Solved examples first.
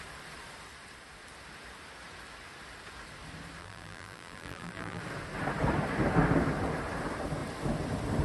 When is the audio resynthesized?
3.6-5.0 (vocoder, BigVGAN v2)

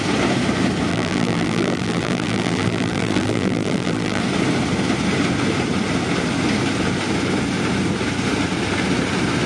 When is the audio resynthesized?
0.9-4.2 (vocoder, BigVGAN v2)

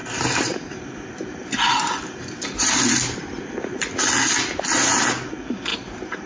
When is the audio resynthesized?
0.0-3.8 (vocoder, BigVGAN v2); 5.7-6.3

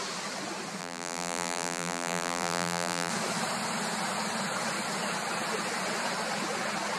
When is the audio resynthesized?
0.8-3.1 (vocoder, BigVGAN v2)

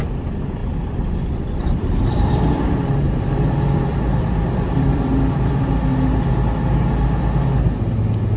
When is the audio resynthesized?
0.6-5.6 (vocoder, BigVGAN v2)